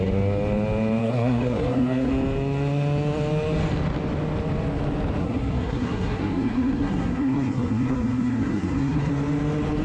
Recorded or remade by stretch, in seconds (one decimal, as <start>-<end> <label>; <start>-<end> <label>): 0.0-1.0 recorded; 1.0-2.1 remade; 2.1-5.2 recorded; 5.2-9.1 remade; 9.1-9.8 recorded

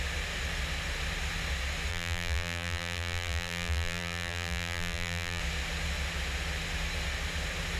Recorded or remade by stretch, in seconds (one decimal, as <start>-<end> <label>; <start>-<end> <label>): 0.0-1.9 recorded; 1.9-5.4 remade; 5.4-7.8 recorded

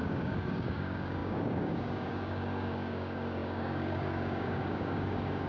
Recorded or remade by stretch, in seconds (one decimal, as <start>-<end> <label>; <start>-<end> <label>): 0.0-5.5 remade

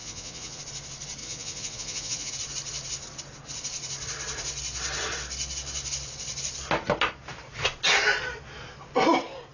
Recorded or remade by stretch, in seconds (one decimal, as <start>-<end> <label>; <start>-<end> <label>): 0.0-0.6 remade; 0.6-1.2 recorded; 1.2-2.3 remade; 2.3-9.5 recorded

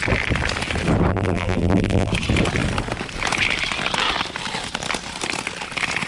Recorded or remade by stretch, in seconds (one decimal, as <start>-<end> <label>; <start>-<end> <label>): 0.0-1.1 recorded; 1.1-2.1 remade; 2.1-6.1 recorded

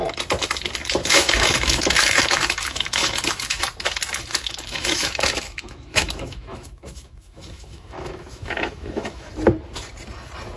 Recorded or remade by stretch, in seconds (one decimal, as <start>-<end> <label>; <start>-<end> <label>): 0.0-1.0 recorded; 1.0-3.6 remade; 3.6-4.3 recorded; 4.3-9.3 remade; 9.3-10.6 recorded

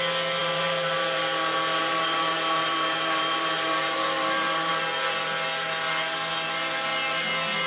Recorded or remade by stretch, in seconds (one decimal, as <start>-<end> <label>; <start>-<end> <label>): 0.0-0.4 recorded; 0.4-1.2 remade; 1.2-1.8 recorded; 1.8-4.7 remade; 4.7-7.7 recorded